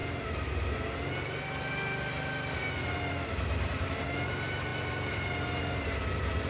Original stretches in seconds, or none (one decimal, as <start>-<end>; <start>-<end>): 0.0-6.5